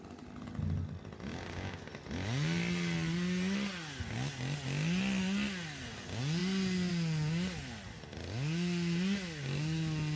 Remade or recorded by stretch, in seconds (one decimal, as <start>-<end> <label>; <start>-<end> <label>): 0.0-1.3 recorded; 1.3-1.9 remade; 1.9-10.2 recorded